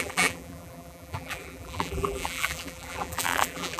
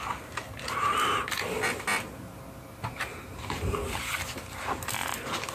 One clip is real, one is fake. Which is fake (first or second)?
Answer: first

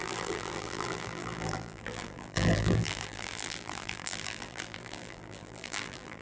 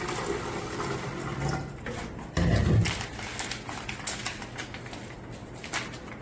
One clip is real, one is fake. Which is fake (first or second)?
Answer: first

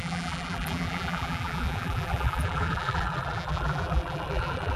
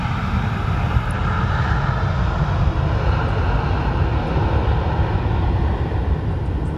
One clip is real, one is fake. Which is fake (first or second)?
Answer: first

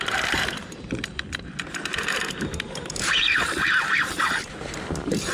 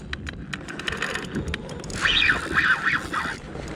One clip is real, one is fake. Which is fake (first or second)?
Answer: first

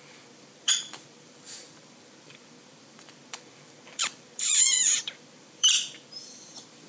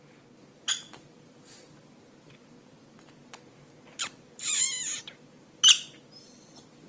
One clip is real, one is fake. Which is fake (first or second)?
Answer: first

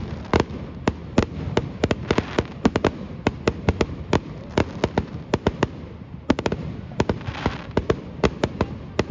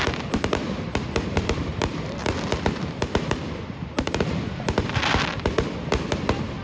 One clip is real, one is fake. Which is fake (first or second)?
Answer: second